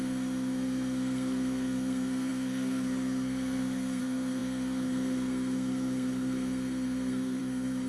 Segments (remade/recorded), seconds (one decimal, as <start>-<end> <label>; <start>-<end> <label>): 0.0-7.9 remade